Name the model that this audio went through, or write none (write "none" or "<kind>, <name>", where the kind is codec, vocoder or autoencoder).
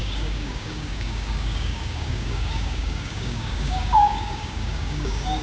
codec, DAC